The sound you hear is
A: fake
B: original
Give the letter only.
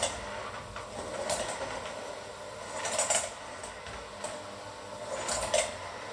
B